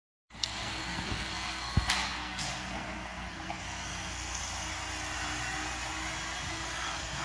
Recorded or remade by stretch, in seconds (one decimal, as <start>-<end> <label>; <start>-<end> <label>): 0.0-4.4 remade; 4.4-6.5 recorded; 6.5-7.2 remade